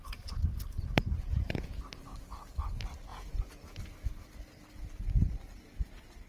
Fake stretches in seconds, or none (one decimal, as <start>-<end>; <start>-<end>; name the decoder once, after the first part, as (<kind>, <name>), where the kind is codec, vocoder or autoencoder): 1.1-1.8 (vocoder, Vocos); 3.1-4.1